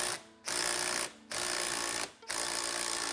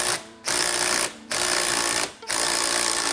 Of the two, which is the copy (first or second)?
second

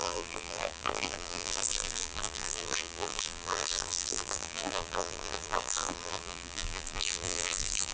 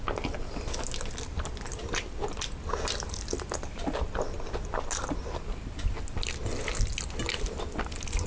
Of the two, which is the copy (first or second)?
first